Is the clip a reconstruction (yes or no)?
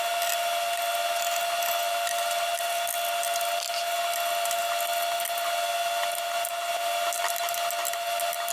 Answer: no